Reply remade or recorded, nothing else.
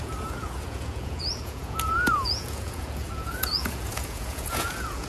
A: remade